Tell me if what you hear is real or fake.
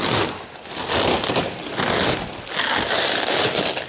real